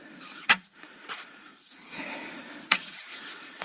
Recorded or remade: remade